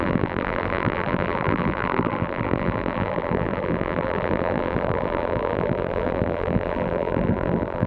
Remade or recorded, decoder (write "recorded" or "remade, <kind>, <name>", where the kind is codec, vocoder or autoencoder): remade, vocoder, BigVGAN v2